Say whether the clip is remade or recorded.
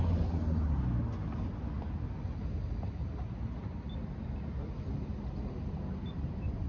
recorded